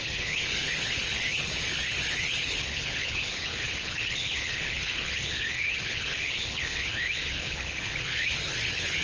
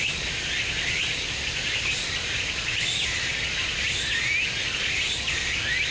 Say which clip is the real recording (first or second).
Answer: second